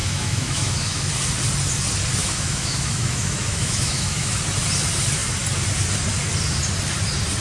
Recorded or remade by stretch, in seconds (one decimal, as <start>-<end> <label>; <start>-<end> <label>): 0.0-1.1 remade; 1.1-2.2 recorded; 2.2-4.3 remade; 4.3-7.4 recorded